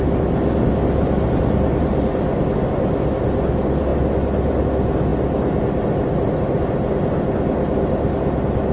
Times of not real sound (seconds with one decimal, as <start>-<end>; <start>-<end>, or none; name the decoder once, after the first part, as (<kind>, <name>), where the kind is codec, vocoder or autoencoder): none